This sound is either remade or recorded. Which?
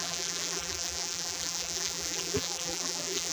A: remade